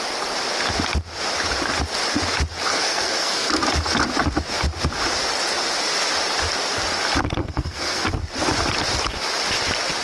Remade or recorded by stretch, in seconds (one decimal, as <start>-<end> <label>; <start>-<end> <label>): 0.0-2.7 recorded; 2.7-3.5 remade; 3.5-7.4 recorded; 7.4-8.0 remade; 8.0-10.0 recorded